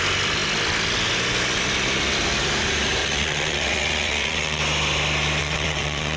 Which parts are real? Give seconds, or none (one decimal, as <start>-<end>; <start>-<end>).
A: 0.0-3.0; 4.6-5.4